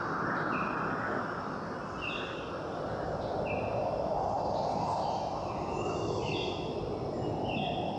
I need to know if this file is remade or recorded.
recorded